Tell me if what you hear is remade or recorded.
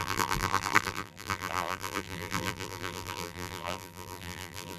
remade